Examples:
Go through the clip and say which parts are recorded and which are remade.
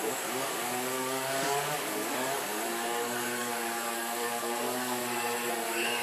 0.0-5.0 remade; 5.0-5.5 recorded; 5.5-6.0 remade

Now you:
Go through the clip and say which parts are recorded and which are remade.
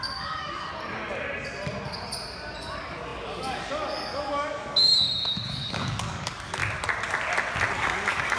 0.0-0.7 remade; 0.7-2.6 recorded; 2.6-6.6 remade; 6.6-7.7 recorded; 7.7-8.4 remade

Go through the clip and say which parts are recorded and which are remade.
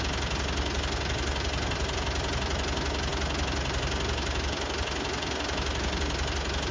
0.0-6.7 recorded